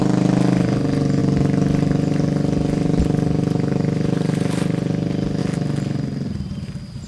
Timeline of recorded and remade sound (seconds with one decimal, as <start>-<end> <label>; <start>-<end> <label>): 0.0-7.1 recorded